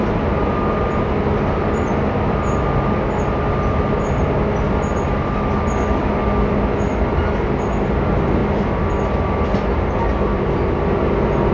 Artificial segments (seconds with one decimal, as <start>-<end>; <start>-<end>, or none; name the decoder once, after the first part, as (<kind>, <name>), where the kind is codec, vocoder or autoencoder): none